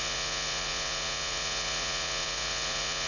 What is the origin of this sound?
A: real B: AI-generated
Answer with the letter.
B